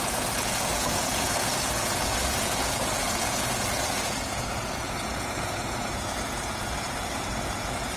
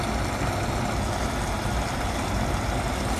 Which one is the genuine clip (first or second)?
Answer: second